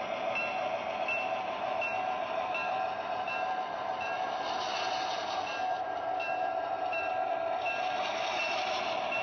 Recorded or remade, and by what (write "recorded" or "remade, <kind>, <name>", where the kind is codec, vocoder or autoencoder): remade, vocoder, BigVGAN v2